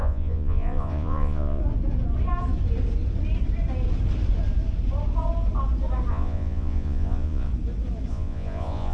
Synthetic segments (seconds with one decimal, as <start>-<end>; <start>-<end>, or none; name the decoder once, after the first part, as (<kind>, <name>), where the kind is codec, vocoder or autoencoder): 0.0-1.6 (vocoder, Vocos); 6.1-7.5; 8.1-8.9